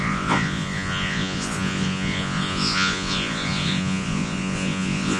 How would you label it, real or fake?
fake